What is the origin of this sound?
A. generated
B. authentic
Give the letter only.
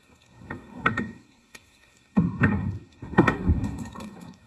A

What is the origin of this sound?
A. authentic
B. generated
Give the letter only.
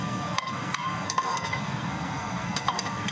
B